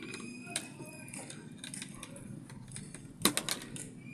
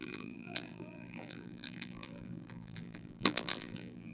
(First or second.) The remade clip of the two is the second